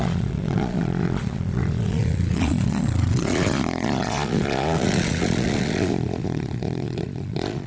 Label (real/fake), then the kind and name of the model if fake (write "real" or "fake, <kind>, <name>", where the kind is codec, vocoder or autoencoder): fake, vocoder, Vocos